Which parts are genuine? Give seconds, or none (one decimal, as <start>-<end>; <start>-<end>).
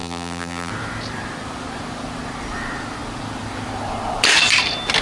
0.7-5.0